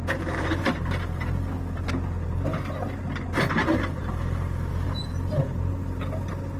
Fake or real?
real